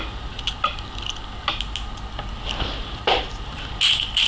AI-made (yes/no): no